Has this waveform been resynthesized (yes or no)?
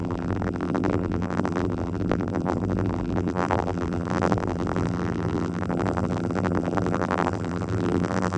yes